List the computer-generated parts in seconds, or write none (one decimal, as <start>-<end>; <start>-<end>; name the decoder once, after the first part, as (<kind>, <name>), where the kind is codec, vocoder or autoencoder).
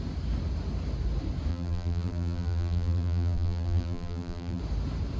1.5-4.6 (vocoder, BigVGAN v2)